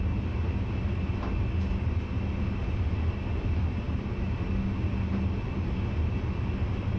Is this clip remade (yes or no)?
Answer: no